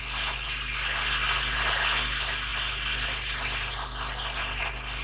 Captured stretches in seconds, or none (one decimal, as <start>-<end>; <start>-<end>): 0.0-5.0

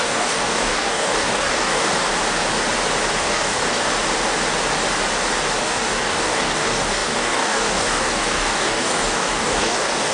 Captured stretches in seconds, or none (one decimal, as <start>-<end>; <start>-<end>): 2.1-3.2; 3.9-5.6